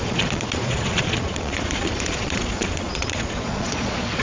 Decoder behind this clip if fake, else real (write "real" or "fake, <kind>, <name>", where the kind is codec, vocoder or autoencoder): fake, vocoder, Vocos